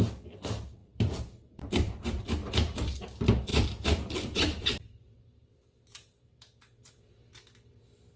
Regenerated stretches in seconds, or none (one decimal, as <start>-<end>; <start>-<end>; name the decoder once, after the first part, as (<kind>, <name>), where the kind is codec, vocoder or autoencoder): 0.8-2.2 (vocoder, BigVGAN v2); 3.5-7.1